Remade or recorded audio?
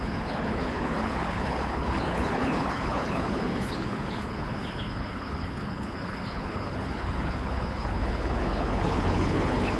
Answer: remade